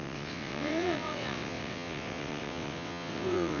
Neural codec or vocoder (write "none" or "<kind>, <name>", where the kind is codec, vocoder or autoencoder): vocoder, WaveNeXt